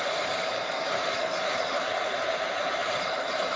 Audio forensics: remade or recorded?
remade